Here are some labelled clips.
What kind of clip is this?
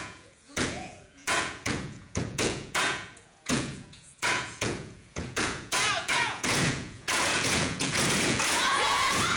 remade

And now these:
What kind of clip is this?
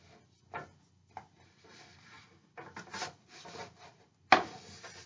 recorded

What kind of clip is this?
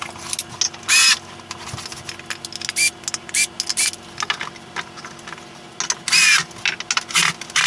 recorded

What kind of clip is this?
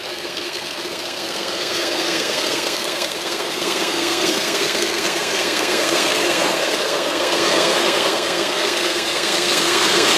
remade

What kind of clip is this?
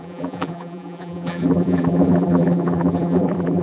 remade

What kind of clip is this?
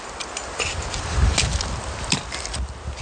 recorded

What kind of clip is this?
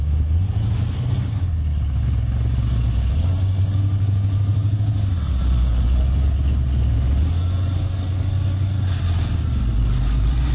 recorded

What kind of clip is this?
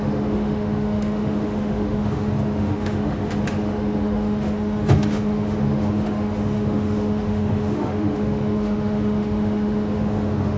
remade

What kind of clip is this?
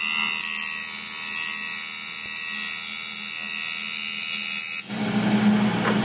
recorded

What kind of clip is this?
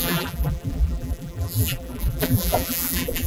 remade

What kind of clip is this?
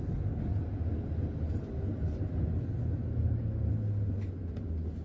recorded